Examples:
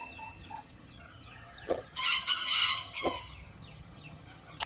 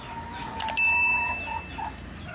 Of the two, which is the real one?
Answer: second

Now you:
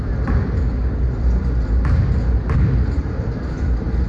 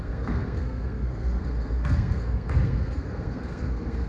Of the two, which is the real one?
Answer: first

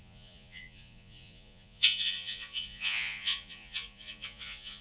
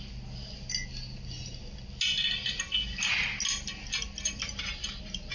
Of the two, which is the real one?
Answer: second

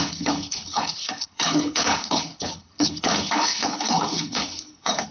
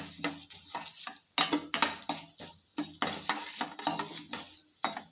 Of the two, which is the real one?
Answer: second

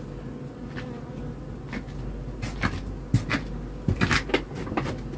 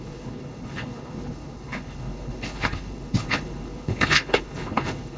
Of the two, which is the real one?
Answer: first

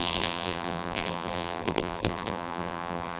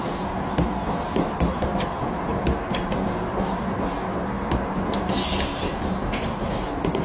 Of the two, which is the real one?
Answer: second